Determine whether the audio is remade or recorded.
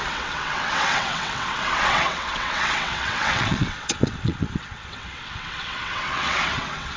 remade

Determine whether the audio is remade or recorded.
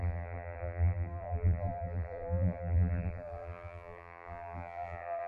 remade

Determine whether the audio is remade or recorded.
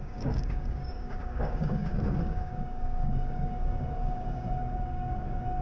remade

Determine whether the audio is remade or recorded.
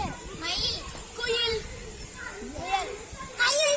remade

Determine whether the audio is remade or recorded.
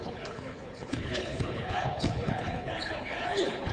remade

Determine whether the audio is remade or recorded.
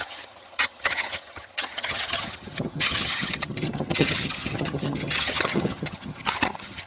remade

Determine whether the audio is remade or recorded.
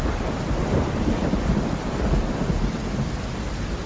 recorded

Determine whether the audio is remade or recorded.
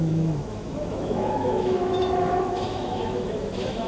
remade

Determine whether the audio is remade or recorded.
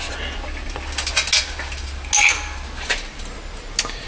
recorded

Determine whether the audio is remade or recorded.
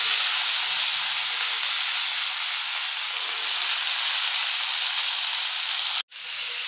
recorded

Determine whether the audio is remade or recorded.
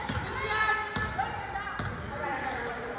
recorded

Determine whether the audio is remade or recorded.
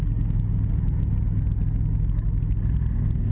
recorded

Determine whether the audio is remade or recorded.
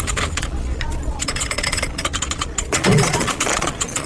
remade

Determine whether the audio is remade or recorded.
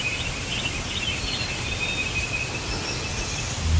recorded